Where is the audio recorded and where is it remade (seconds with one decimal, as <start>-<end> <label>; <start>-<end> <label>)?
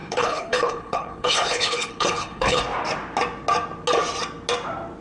0.0-2.6 remade; 2.6-5.0 recorded